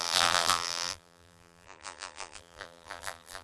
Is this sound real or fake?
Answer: fake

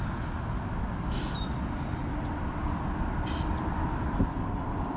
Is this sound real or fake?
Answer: real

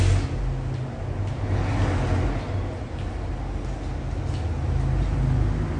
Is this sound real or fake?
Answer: real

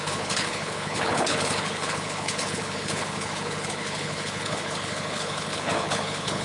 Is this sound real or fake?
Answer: fake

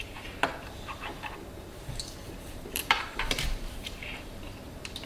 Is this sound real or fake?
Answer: fake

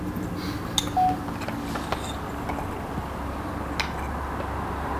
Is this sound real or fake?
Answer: real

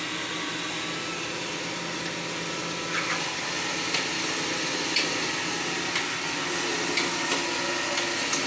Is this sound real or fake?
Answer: real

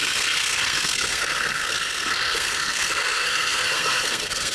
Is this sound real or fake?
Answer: fake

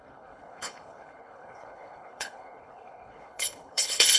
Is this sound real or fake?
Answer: fake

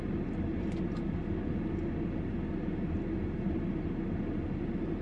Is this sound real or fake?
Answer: real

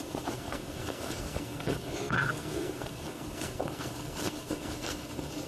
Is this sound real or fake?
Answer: fake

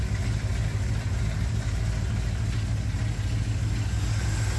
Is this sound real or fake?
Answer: real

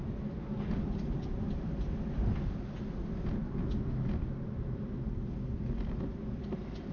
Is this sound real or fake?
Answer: real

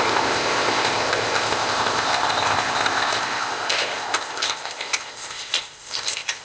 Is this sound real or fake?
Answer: fake